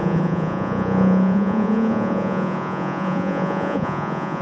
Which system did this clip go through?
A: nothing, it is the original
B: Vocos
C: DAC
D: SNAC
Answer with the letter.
B